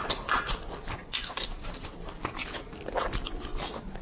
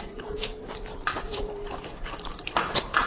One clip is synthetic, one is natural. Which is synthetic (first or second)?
second